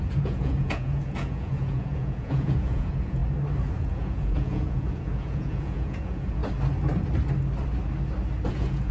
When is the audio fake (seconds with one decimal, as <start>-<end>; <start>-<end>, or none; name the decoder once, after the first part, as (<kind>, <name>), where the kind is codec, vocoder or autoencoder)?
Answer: 0.0-3.2 (vocoder, Vocos); 3.8-6.4; 8.5-8.9